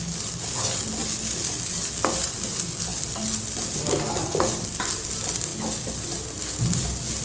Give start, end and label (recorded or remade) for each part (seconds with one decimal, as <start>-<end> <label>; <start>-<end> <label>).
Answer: 0.0-7.2 recorded